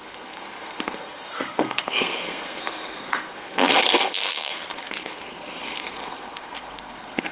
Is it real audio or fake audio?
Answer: fake